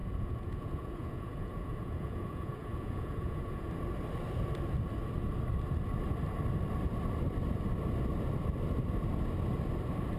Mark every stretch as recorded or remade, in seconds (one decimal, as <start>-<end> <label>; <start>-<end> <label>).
0.0-3.7 remade; 3.7-10.2 recorded